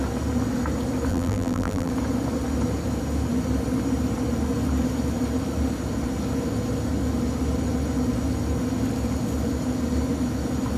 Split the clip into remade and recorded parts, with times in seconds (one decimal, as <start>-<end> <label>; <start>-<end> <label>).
0.0-1.1 recorded; 1.1-1.9 remade; 1.9-10.8 recorded